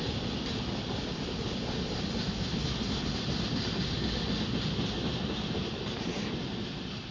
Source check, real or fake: real